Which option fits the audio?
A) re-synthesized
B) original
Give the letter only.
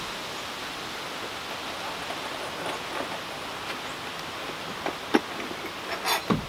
B